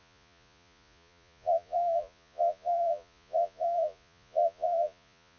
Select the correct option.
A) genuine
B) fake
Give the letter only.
B